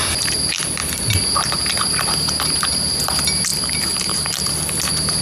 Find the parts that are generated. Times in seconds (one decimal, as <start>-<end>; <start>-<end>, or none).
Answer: 3.5-4.5